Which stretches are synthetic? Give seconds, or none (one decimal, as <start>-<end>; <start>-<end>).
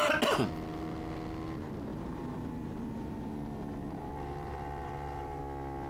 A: 1.9-5.4